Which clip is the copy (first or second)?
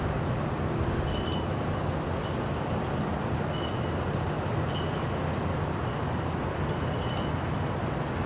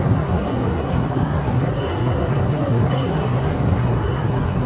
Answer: second